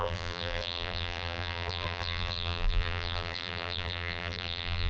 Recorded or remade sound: remade